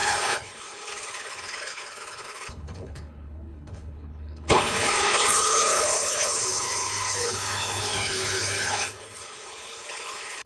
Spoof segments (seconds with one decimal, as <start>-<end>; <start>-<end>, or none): 0.0-10.5

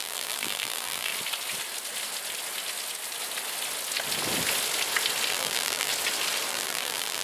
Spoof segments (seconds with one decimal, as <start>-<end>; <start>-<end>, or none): 0.0-1.1; 5.3-5.9; 6.5-7.2

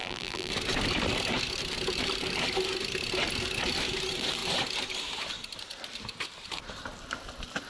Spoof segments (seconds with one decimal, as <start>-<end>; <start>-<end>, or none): 0.0-0.5

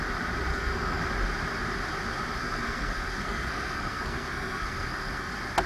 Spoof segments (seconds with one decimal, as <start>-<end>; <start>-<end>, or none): 0.5-1.0; 2.4-5.3

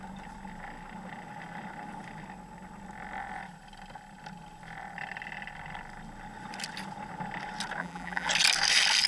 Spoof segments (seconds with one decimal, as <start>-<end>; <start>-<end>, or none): 7.8-8.3

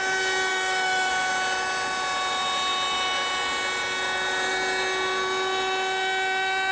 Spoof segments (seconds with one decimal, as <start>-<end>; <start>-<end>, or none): 0.5-1.1